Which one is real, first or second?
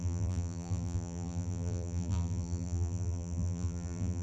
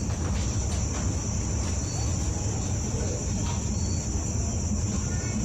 second